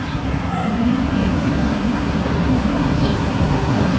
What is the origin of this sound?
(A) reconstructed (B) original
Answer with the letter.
A